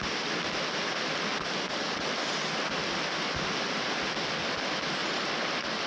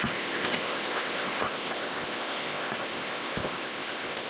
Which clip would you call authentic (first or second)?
first